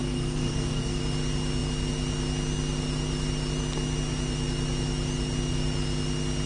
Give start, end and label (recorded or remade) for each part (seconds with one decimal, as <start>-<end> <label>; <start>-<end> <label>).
0.0-1.0 remade; 1.0-6.5 recorded